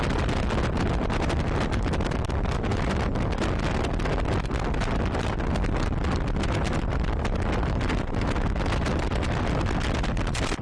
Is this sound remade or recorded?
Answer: recorded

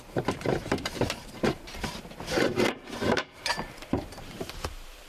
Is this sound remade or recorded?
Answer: remade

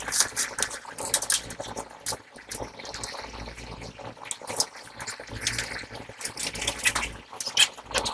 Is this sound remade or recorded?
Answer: recorded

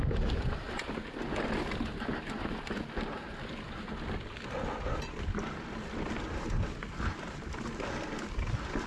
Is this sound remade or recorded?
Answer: recorded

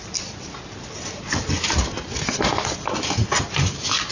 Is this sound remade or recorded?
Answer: recorded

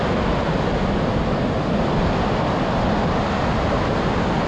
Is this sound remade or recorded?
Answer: recorded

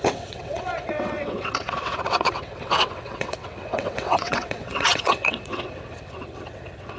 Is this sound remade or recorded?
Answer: remade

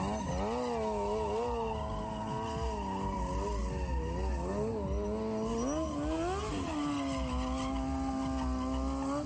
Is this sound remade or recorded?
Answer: recorded